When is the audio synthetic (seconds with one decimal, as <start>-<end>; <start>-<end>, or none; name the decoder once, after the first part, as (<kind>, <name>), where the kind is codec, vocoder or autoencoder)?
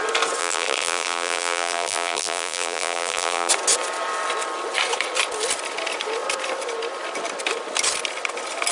0.4-3.5 (vocoder, BigVGAN v2)